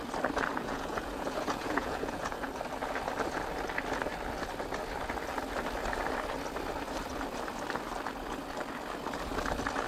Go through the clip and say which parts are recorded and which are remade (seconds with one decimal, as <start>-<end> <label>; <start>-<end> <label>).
0.0-0.5 recorded; 0.5-2.5 remade; 2.5-9.9 recorded